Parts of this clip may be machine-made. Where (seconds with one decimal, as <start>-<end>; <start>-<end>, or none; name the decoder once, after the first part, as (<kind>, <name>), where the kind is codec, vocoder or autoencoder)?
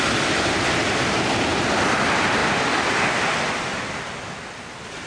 none